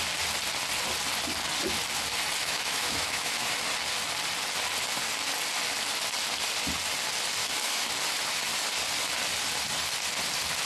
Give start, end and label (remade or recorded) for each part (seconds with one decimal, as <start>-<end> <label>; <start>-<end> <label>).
0.0-2.4 recorded; 2.4-3.6 remade; 3.6-7.4 recorded; 7.4-7.9 remade; 7.9-10.7 recorded